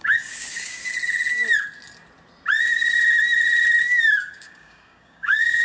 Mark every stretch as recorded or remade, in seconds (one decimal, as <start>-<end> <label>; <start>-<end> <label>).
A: 0.0-0.8 remade; 0.8-4.2 recorded; 4.2-5.6 remade